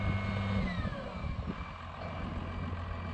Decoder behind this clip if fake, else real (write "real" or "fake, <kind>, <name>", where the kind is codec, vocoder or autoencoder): real